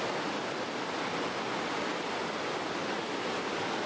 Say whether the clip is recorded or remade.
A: recorded